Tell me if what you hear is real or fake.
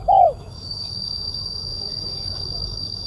fake